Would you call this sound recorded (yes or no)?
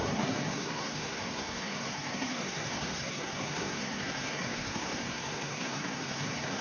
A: no